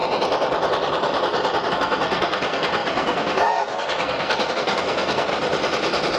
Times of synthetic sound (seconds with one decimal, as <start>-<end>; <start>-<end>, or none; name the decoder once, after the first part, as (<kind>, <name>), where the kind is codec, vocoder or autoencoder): 1.7-5.3 (codec, SNAC)